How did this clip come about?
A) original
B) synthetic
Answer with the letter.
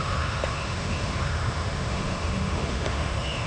B